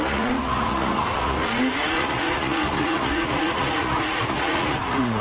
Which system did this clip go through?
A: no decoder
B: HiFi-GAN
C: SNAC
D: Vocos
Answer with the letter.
D